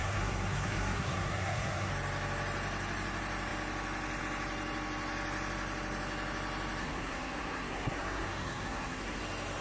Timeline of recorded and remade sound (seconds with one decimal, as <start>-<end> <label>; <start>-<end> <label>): 0.0-1.9 remade; 1.9-6.8 recorded; 6.8-9.2 remade; 9.2-9.6 recorded